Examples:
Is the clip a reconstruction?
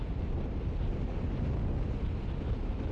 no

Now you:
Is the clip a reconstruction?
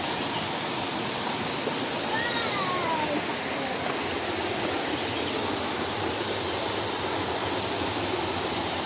no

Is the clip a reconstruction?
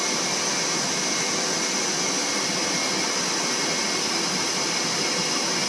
no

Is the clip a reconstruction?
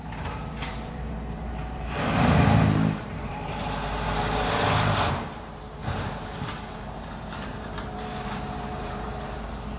yes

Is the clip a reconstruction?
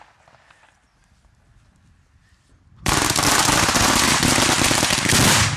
no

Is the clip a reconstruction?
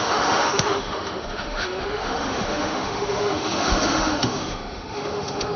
yes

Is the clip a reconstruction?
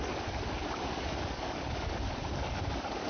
yes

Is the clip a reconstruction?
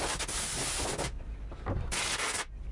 no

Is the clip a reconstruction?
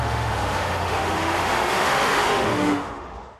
yes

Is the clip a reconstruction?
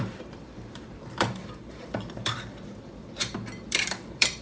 yes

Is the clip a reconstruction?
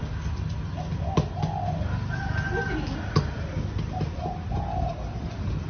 no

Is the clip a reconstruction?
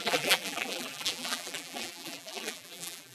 yes